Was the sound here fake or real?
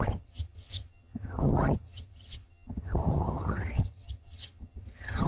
fake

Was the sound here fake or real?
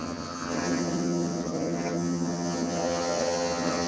fake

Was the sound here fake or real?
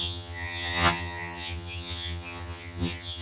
fake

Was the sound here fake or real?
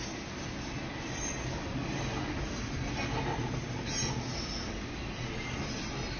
real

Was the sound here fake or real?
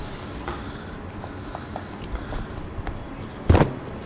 real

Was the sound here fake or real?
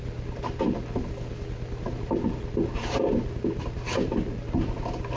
real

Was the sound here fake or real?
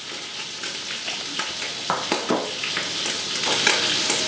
real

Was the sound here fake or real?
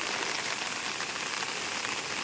real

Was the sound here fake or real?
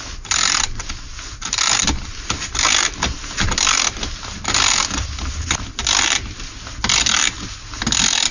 real